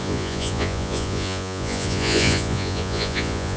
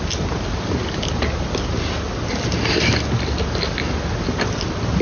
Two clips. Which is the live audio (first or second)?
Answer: second